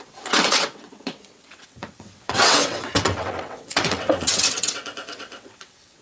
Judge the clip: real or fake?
fake